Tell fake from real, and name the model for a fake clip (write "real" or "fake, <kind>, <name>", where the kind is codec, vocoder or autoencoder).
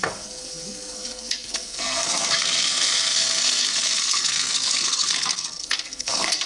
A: fake, codec, SNAC